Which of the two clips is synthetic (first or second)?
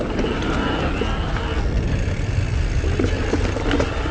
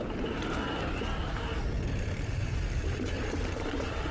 second